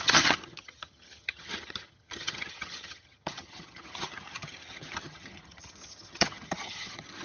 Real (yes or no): no